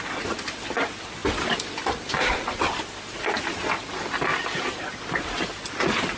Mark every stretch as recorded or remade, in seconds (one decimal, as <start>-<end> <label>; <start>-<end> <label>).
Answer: 0.0-6.2 recorded